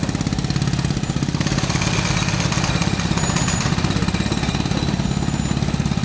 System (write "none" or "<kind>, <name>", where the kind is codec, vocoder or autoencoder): none